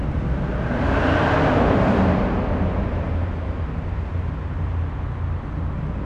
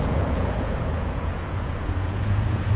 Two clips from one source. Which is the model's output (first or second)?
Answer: second